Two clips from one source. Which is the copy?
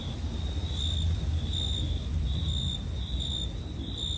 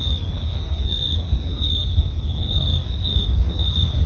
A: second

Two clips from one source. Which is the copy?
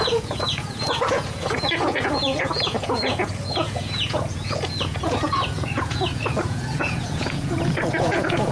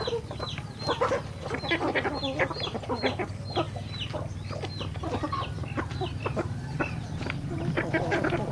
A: first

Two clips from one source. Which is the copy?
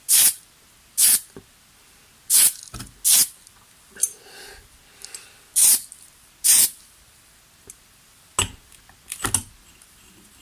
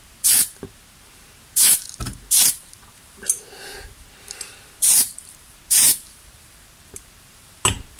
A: second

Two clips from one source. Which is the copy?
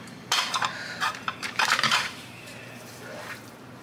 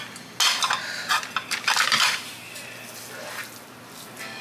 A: first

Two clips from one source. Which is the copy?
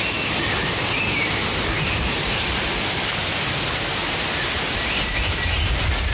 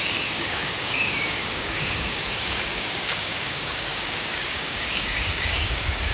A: second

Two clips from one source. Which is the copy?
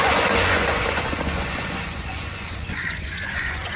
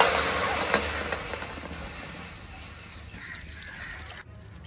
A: first